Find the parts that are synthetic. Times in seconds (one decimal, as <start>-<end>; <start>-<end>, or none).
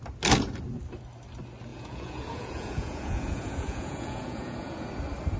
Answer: 1.7-4.9